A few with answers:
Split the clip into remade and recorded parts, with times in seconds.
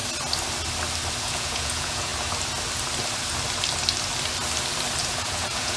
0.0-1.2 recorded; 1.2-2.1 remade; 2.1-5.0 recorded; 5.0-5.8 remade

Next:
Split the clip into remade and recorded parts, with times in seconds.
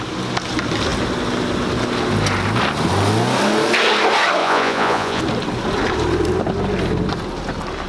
0.0-4.4 recorded; 4.4-5.2 remade; 5.2-7.9 recorded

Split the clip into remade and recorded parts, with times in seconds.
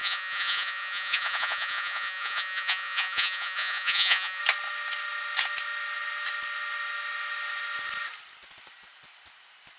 0.0-4.4 remade; 4.4-9.8 recorded